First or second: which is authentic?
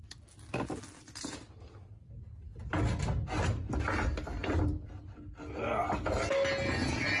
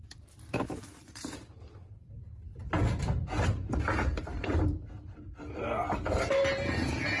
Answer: first